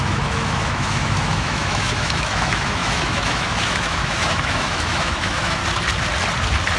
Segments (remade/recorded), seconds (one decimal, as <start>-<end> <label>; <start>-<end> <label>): 0.0-5.6 remade; 5.6-6.8 recorded